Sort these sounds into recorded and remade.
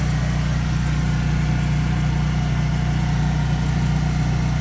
recorded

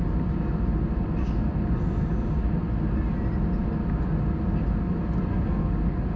recorded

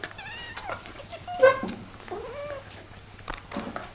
recorded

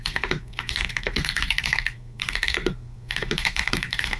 remade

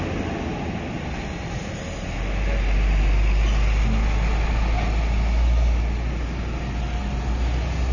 recorded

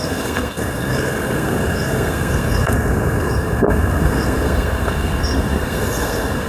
remade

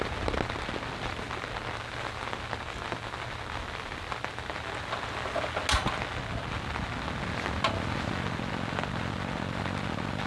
recorded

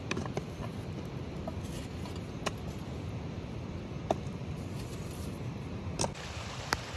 recorded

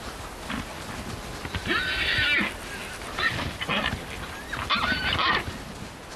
recorded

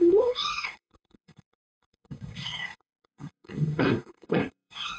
remade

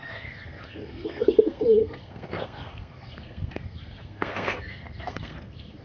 remade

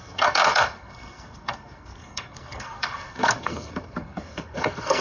remade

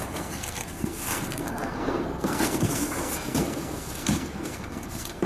remade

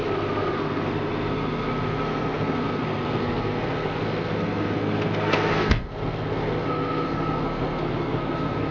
remade